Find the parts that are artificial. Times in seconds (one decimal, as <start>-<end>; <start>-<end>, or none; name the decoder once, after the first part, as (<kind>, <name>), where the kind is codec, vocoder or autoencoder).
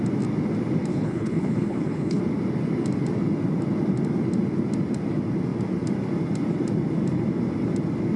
0.9-2.2 (codec, HILCodec)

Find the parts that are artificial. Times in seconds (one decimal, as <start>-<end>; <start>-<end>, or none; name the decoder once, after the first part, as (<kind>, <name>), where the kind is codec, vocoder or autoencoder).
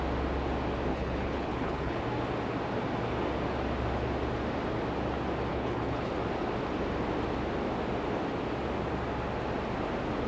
0.9-2.0 (codec, HILCodec); 5.5-6.1